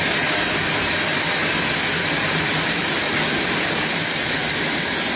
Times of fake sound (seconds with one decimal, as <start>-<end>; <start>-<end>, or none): none